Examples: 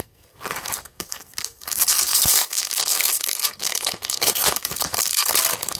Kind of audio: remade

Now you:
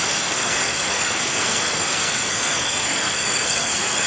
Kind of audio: remade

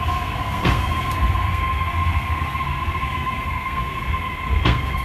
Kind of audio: remade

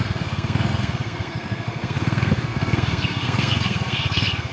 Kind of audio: remade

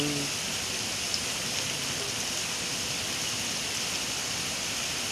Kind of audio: recorded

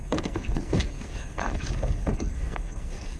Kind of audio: remade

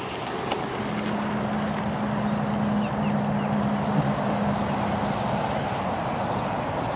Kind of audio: recorded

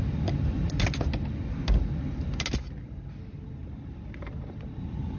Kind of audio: recorded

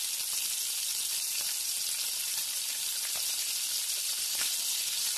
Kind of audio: recorded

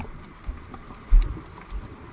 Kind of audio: recorded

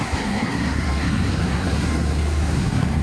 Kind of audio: remade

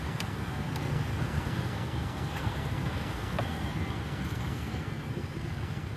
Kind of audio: remade